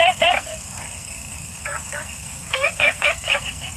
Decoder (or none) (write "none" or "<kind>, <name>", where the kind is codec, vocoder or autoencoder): codec, SNAC